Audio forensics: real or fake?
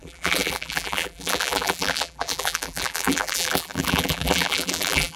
fake